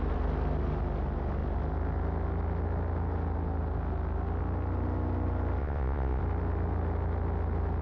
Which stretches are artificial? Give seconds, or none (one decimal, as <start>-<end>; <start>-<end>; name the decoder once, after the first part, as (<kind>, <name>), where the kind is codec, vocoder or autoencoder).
5.6-6.2 (vocoder, WaveNeXt)